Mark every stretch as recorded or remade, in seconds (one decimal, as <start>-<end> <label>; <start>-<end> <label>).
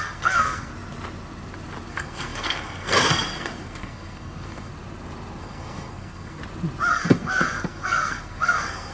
0.0-0.7 remade; 0.7-1.9 recorded; 1.9-4.7 remade; 4.7-5.4 recorded; 5.4-6.4 remade; 6.4-6.9 recorded; 6.9-8.9 remade